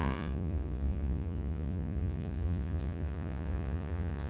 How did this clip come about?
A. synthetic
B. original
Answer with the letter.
A